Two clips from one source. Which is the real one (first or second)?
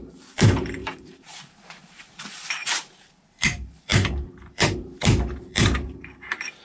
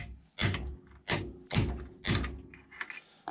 second